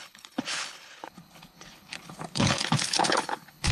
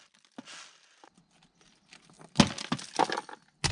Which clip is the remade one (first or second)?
first